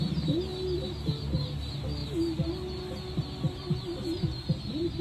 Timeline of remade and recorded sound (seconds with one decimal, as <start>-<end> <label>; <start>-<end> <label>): 0.0-5.0 recorded